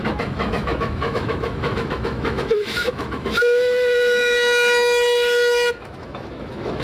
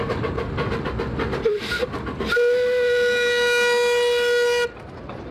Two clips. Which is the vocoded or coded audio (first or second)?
first